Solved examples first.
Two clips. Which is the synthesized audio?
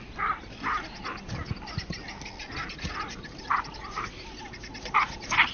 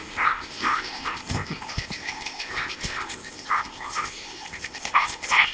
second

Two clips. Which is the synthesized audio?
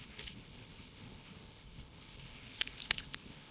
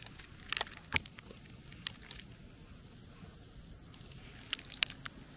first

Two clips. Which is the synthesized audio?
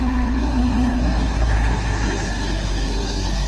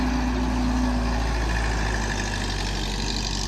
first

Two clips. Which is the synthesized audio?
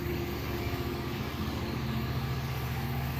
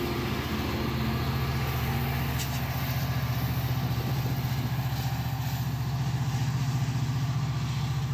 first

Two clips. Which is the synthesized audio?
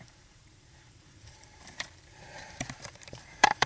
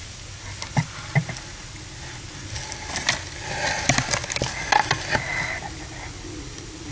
first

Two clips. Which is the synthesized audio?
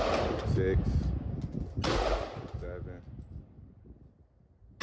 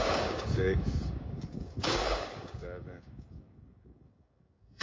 second